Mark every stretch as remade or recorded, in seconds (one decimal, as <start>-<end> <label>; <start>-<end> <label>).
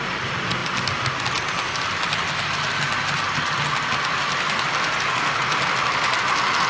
0.0-6.7 recorded